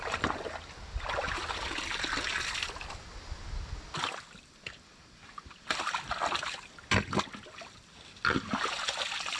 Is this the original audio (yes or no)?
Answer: yes